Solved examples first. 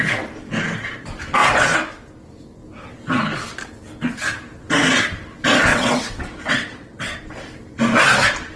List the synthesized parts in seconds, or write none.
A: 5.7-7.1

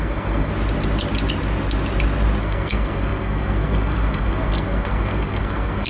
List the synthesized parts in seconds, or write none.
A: 0.0-0.5; 2.4-5.9

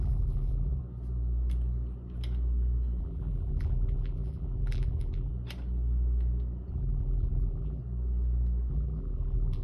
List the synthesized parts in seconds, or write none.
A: 0.0-0.8; 3.0-5.3; 6.7-7.8; 8.7-9.6

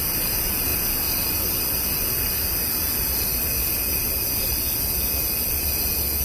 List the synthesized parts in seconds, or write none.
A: none

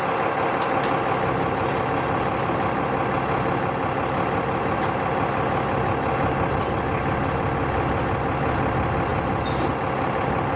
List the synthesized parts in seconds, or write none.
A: none

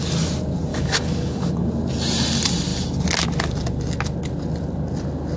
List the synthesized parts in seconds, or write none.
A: 0.7-1.5

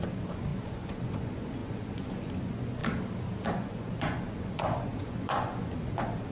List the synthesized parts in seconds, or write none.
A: 0.0-2.8; 3.5-6.3